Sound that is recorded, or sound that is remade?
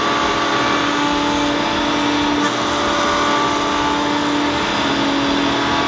recorded